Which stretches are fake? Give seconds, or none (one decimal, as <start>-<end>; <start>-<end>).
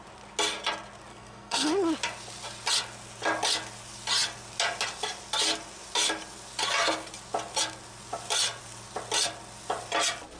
1.1-1.7